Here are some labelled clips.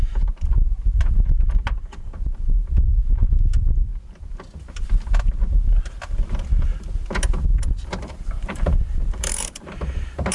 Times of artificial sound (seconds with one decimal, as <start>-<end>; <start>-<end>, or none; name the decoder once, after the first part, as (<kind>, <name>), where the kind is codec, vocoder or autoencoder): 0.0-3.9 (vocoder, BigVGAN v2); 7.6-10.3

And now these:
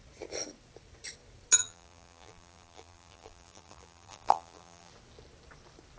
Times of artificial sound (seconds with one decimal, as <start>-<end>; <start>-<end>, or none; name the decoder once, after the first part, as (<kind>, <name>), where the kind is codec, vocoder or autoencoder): 1.6-4.9 (vocoder, BigVGAN v2)

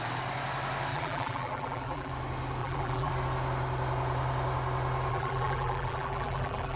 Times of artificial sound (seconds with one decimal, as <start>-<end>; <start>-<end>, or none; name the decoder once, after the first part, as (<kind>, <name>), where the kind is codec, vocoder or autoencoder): 0.9-2.1 (vocoder, BigVGAN v2); 2.6-3.1; 5.1-6.8